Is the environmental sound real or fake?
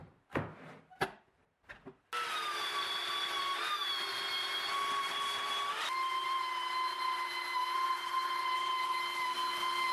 real